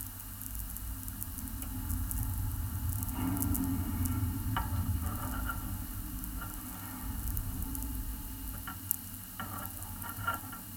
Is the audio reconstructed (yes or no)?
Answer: no